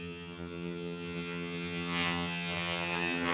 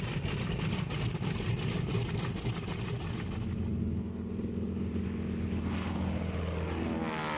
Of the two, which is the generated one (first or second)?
first